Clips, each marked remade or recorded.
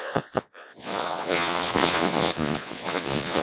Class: remade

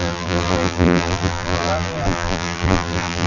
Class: remade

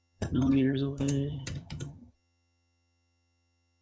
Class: remade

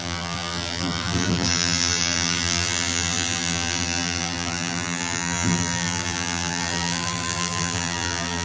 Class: remade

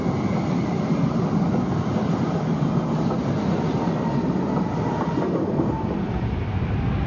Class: recorded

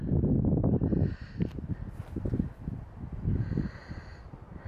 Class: recorded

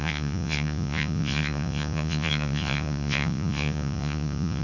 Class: remade